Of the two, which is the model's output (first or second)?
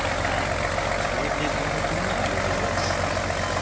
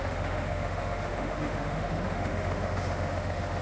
second